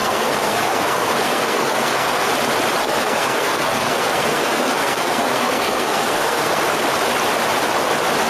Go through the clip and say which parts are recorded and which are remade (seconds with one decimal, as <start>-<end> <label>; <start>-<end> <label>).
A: 0.0-2.3 remade; 2.3-2.8 recorded; 2.8-6.6 remade; 6.6-8.3 recorded